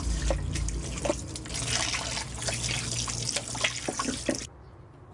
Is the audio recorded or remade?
recorded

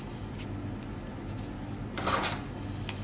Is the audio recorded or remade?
recorded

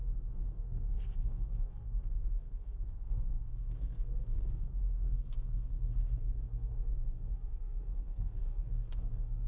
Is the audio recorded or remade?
remade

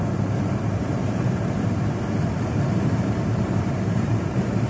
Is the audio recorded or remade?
remade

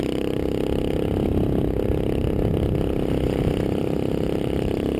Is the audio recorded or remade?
recorded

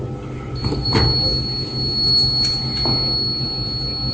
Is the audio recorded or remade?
recorded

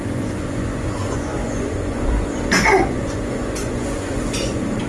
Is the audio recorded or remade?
remade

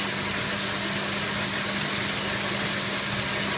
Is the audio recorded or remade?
recorded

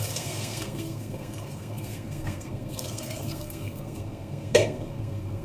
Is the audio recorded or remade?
remade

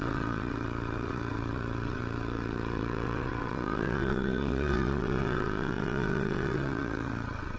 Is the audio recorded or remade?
remade